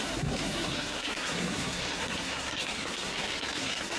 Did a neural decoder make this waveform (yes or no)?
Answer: yes